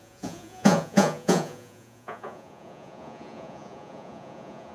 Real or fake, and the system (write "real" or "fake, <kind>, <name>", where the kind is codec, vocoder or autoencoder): fake, vocoder, Vocos